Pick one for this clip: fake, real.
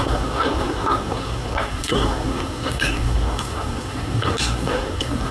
fake